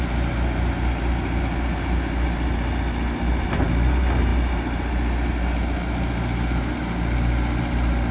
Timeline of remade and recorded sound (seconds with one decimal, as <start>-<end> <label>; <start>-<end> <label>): 0.0-8.1 recorded